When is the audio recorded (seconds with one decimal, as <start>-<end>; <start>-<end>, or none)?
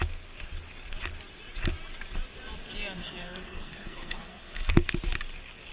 0.0-3.0; 4.9-5.7